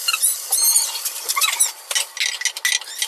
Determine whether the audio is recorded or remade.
recorded